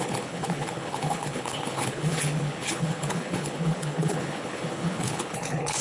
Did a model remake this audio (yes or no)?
yes